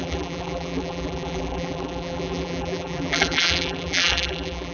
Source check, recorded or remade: remade